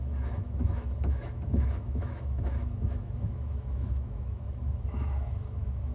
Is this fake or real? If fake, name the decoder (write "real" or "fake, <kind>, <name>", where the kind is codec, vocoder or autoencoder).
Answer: fake, autoencoder, DAC-VAE